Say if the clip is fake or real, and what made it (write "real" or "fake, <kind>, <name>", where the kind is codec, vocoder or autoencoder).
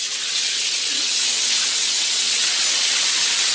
fake, vocoder, WaveNeXt